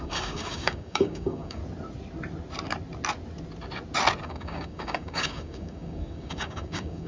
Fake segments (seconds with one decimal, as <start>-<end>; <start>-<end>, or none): 0.0-1.6; 4.2-7.1